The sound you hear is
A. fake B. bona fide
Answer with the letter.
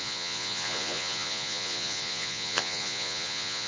A